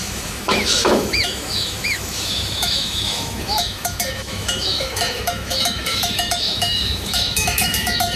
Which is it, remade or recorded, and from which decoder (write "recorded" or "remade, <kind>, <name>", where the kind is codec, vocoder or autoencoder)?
remade, autoencoder, DAC-VAE